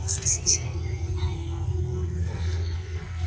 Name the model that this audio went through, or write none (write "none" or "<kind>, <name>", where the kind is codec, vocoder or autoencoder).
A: codec, SNAC